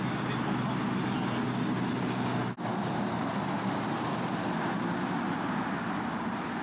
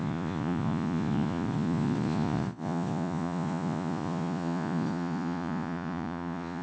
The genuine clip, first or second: first